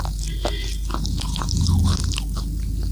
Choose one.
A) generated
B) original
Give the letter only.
B